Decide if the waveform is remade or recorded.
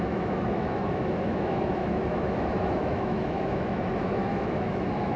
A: remade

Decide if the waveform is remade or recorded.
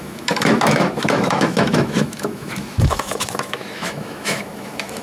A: remade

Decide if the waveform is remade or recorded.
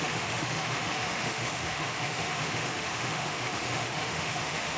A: remade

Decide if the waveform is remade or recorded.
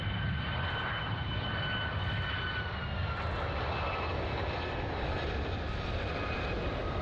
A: recorded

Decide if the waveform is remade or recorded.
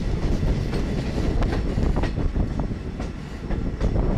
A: recorded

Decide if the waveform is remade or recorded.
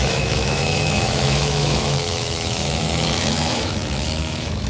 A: remade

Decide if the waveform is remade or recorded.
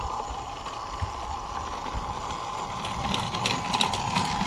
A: recorded